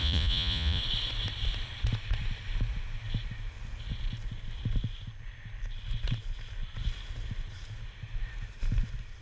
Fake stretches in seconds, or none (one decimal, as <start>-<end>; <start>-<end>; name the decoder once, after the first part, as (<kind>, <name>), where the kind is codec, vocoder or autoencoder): 0.0-0.8 (vocoder, Vocos)